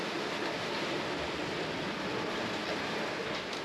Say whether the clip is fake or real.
real